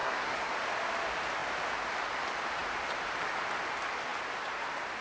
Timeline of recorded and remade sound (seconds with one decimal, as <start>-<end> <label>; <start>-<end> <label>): 0.0-0.5 remade; 0.5-5.0 recorded